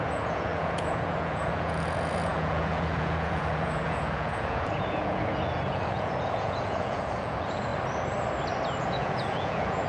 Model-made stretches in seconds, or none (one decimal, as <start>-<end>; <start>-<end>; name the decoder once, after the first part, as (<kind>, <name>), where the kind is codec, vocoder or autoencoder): 0.0-7.7 (vocoder, Vocos); 8.8-9.9